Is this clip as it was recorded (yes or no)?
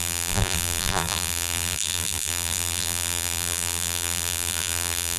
no